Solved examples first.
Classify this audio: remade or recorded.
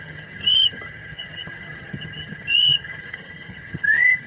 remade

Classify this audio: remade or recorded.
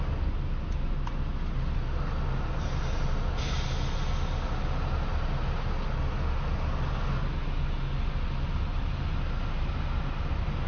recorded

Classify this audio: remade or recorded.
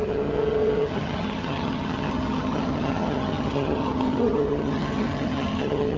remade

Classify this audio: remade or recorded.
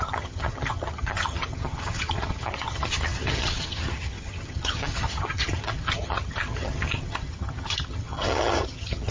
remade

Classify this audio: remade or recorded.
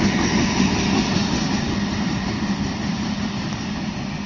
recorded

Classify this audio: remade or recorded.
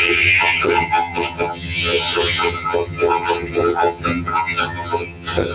remade